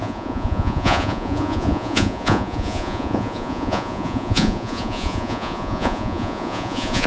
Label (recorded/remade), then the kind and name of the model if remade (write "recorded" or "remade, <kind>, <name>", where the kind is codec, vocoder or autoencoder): remade, vocoder, Vocos